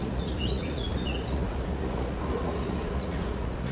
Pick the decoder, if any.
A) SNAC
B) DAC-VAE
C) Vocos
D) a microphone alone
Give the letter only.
C